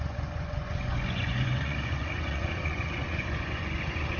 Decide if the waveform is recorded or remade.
remade